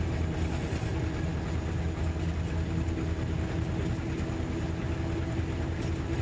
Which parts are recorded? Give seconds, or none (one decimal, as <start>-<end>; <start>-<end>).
0.0-6.2